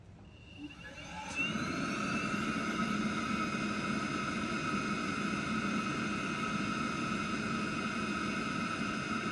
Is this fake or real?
real